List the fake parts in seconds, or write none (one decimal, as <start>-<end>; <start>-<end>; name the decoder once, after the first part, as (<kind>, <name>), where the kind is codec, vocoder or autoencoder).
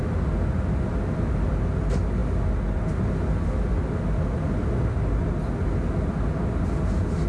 none